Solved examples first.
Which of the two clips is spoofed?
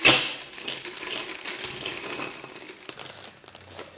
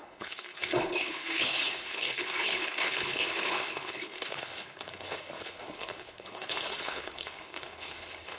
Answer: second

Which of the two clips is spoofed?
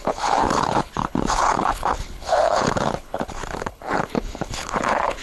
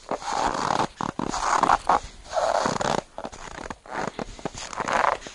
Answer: first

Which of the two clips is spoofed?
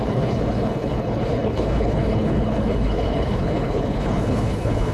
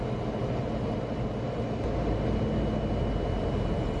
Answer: first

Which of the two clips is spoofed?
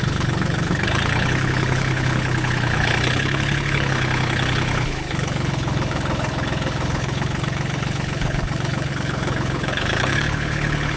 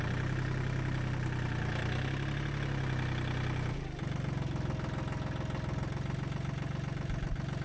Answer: first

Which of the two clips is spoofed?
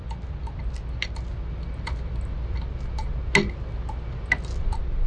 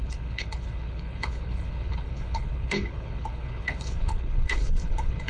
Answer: second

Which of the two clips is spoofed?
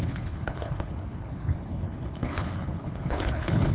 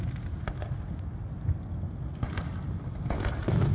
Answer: first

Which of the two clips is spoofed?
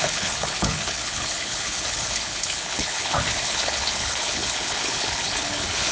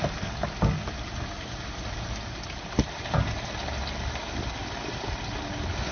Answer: first